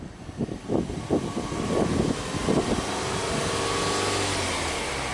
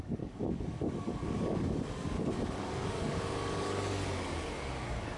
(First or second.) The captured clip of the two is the first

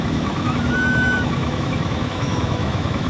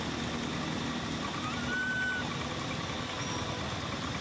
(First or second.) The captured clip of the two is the second